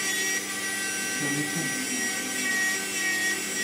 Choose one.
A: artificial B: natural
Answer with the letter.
B